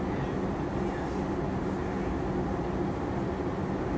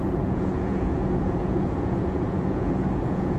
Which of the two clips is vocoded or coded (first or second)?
second